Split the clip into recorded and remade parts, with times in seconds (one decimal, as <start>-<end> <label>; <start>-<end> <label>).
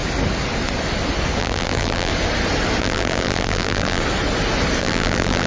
0.0-1.4 recorded; 1.4-2.1 remade; 2.1-2.8 recorded; 2.8-4.0 remade; 4.0-4.8 recorded; 4.8-5.5 remade